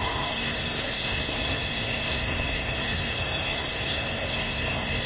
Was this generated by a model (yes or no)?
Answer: yes